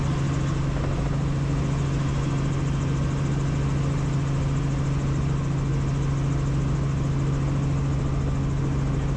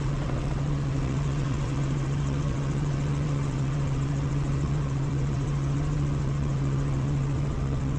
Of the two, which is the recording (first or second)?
first